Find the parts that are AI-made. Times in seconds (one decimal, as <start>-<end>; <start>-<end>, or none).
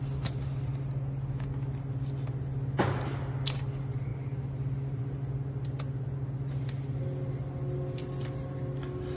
none